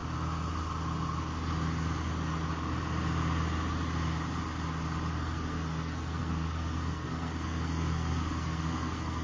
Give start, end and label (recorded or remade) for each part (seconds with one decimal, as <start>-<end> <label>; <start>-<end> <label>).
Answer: 0.0-5.1 recorded; 5.1-9.2 remade